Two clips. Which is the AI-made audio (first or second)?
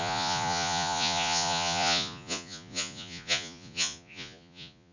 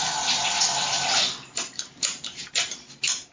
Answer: first